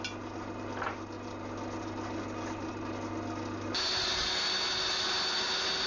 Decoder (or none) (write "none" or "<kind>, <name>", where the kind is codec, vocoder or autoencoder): none